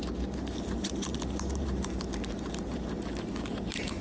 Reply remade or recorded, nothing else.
remade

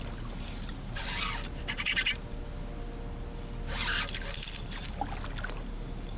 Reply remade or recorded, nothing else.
recorded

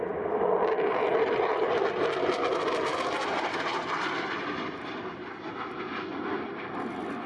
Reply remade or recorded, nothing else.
remade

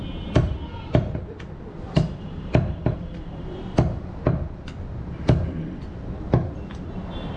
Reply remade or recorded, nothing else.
remade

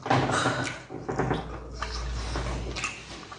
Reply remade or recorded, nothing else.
recorded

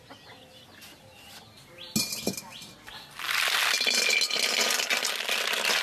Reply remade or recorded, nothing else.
recorded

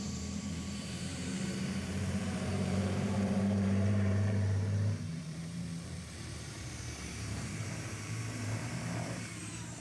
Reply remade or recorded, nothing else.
remade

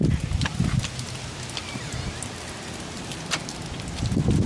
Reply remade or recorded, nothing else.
recorded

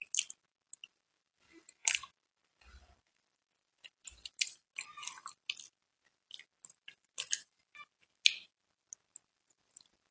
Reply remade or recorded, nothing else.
recorded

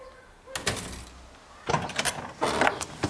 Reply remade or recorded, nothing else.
recorded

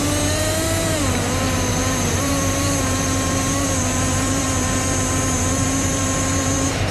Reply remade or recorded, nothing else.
remade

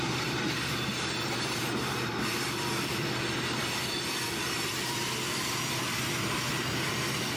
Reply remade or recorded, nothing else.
remade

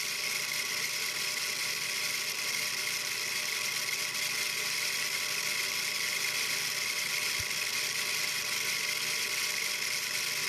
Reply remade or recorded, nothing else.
recorded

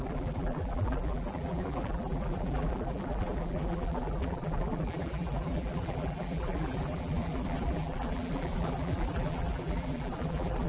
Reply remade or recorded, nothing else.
remade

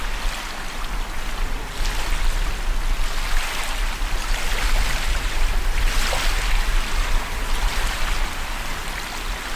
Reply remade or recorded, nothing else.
recorded